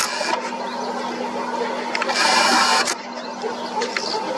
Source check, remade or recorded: recorded